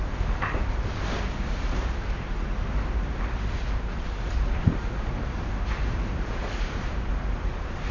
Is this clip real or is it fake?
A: fake